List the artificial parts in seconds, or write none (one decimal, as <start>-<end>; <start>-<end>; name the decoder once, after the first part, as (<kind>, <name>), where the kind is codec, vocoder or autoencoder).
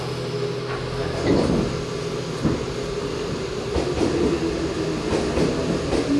none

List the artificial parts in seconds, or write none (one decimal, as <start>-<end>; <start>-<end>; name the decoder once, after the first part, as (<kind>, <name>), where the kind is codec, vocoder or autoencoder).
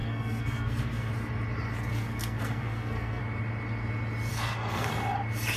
0.0-1.1 (codec, SNAC); 1.9-3.2; 4.3-4.9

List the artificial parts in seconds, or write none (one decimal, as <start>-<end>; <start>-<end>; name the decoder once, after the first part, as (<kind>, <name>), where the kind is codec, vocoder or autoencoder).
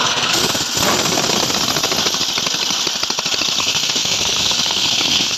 0.0-0.4 (codec, SNAC); 3.6-5.4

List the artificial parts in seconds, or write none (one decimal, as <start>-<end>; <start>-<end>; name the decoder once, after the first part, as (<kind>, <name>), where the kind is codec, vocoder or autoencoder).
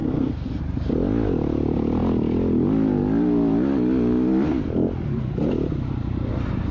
0.0-0.6 (codec, SNAC)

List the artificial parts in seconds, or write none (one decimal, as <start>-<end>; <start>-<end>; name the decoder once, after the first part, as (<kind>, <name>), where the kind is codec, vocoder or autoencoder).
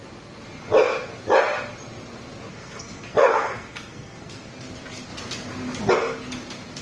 2.5-4.5 (codec, SNAC)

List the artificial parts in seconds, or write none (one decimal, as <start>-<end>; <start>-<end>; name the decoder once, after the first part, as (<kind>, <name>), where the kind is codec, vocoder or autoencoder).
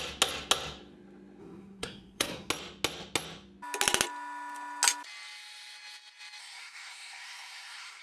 1.4-2.5 (codec, SNAC); 6.4-8.0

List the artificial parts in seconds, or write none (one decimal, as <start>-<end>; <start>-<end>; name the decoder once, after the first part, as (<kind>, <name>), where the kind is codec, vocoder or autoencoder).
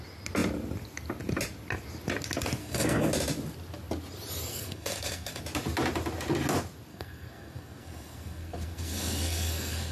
2.6-3.1 (codec, SNAC); 4.5-5.4; 6.9-9.9